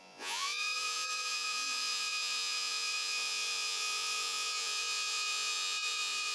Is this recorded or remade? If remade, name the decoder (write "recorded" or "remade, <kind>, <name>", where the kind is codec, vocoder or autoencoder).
remade, vocoder, Vocos